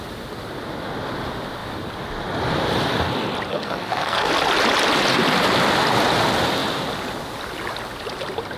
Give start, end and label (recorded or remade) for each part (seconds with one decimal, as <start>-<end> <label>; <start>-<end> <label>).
0.0-3.5 recorded; 3.5-4.3 remade; 4.3-8.6 recorded